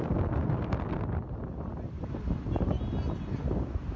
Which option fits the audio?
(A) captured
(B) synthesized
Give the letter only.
A